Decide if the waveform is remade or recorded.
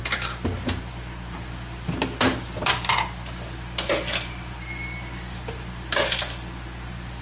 recorded